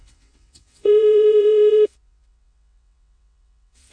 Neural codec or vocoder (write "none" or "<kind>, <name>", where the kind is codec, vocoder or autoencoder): vocoder, WaveNeXt